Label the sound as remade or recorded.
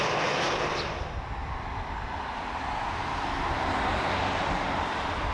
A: recorded